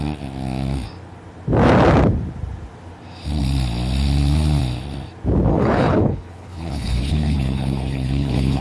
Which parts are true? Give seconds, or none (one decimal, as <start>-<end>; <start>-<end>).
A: 0.0-5.5